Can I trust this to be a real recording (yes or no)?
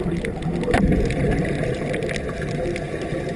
yes